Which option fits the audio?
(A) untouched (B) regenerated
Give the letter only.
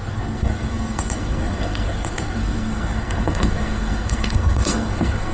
B